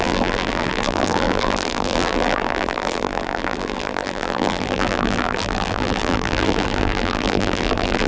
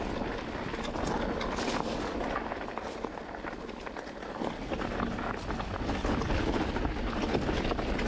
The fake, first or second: first